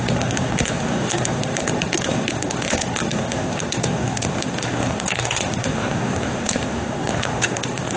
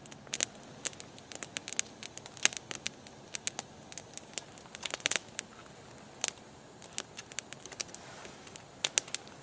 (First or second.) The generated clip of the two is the first